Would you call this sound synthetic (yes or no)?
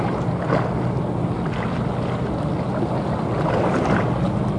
no